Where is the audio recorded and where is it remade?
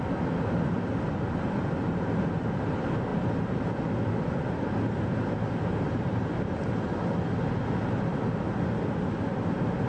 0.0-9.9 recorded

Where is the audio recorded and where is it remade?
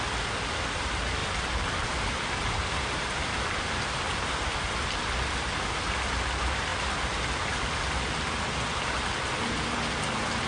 0.0-1.2 recorded; 1.2-3.3 remade; 3.3-10.5 recorded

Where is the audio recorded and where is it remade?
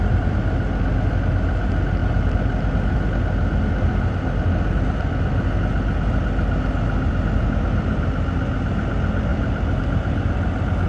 0.0-10.9 recorded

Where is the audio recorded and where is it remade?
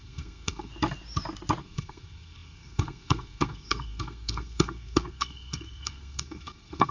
0.0-0.7 remade; 0.7-1.6 recorded; 1.6-6.9 remade